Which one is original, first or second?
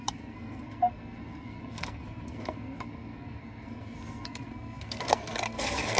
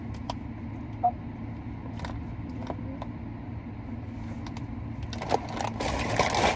second